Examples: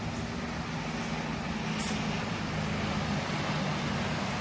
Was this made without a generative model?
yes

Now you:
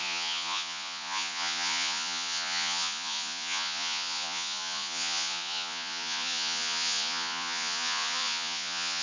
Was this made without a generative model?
no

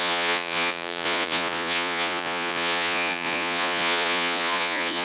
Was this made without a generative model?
no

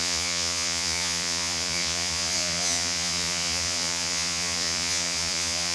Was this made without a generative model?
no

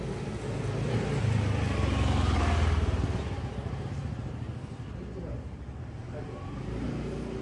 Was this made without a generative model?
yes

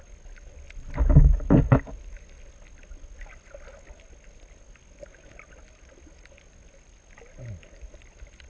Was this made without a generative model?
yes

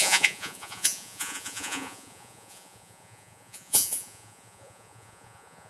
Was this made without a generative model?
no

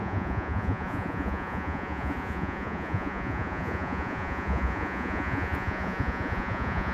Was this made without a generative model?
no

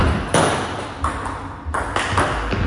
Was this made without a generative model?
yes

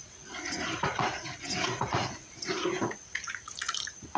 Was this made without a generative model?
no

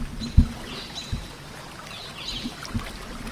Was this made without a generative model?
yes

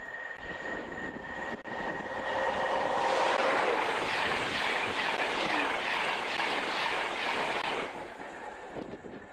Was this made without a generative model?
yes